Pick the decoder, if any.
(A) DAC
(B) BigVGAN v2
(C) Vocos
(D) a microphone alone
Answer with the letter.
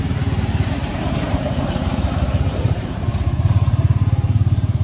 B